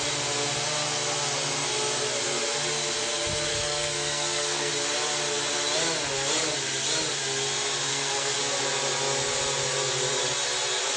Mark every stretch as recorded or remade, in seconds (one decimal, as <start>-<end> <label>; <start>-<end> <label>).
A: 0.0-3.5 recorded; 3.5-4.7 remade; 4.7-7.9 recorded; 7.9-8.4 remade; 8.4-11.0 recorded